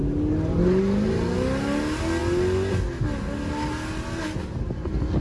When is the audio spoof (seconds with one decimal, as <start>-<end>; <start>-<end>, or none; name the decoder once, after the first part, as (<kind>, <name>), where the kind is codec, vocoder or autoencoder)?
none